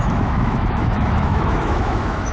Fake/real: fake